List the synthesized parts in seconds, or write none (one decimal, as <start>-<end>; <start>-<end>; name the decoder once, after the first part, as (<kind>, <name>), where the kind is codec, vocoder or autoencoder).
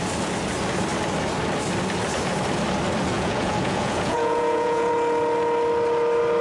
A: 3.1-4.9 (vocoder, Vocos)